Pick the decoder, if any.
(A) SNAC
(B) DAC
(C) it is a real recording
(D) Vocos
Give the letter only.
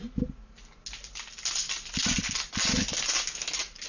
C